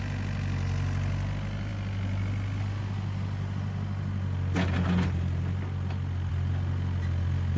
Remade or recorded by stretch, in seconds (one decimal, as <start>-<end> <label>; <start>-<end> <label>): 0.0-7.6 recorded